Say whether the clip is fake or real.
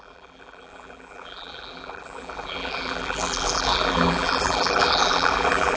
fake